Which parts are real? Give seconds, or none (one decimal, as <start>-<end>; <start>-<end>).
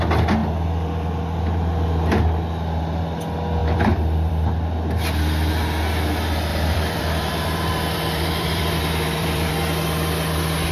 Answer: 0.0-3.6; 4.3-6.5; 9.5-10.7